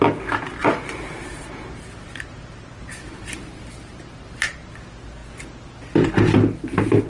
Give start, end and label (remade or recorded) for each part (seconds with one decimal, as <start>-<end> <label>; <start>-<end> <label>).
0.0-0.6 recorded; 0.6-4.7 remade; 4.7-7.1 recorded